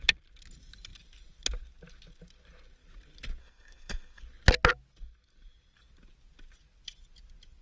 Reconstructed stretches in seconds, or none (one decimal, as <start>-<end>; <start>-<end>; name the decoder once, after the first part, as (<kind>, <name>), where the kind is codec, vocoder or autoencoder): 3.4-4.2 (codec, SNAC)